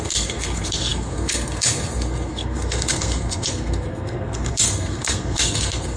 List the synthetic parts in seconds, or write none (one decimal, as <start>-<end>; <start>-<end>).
0.0-6.0